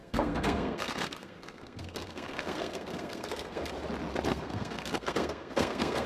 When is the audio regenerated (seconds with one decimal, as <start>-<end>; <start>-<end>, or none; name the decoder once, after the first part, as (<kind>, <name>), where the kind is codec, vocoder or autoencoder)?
0.0-3.7 (codec, SNAC); 4.3-6.1